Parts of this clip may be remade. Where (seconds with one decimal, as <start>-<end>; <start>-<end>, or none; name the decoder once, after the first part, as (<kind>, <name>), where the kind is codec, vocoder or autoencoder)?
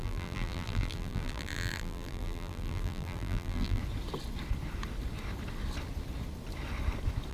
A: 0.0-3.8 (vocoder, BigVGAN v2)